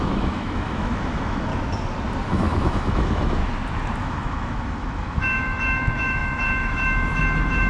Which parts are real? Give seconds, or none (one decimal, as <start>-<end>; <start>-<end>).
1.5-2.3; 3.4-4.0